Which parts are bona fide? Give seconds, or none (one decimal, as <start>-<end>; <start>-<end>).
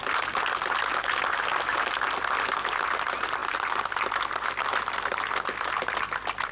0.0-6.5